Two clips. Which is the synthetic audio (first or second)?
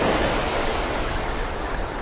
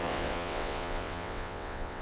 second